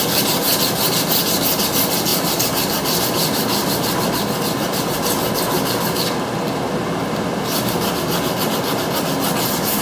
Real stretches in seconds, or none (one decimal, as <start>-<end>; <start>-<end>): 0.0-2.1; 3.0-9.8